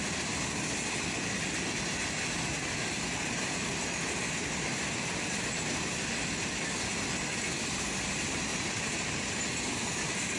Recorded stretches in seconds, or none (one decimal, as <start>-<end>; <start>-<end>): 0.0-8.5; 9.4-10.4